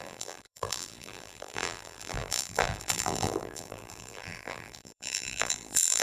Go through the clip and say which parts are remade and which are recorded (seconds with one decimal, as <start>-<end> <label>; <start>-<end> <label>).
0.0-6.0 remade